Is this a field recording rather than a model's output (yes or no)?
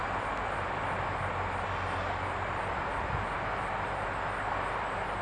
yes